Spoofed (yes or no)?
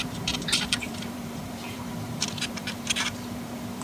yes